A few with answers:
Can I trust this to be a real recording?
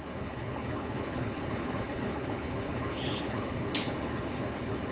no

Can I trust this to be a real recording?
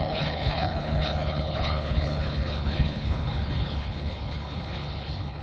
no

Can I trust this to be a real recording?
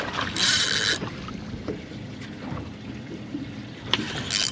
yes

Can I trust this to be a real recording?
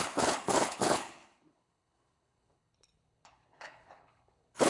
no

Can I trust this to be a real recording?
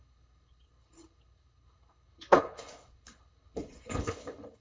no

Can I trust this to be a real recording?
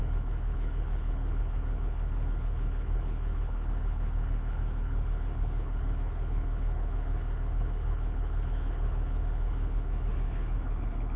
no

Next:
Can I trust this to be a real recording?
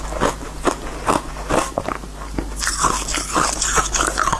yes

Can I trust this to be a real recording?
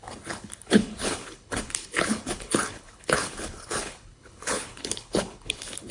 no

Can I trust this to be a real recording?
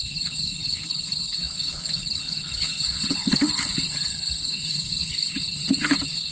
no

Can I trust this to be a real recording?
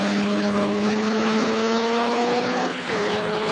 no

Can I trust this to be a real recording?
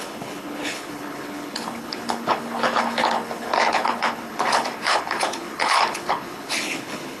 no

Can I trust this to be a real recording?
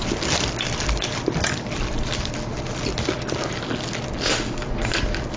yes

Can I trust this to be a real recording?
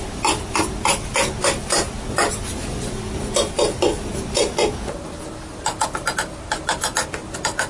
yes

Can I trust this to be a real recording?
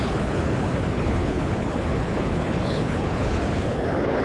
no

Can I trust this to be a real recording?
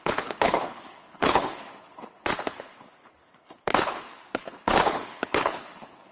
no